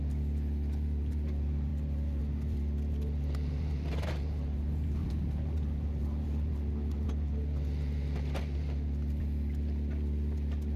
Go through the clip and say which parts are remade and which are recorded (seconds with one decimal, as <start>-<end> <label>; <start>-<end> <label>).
0.0-10.8 recorded